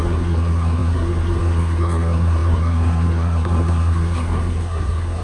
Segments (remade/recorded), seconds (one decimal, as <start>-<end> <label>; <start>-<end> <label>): 0.0-5.2 remade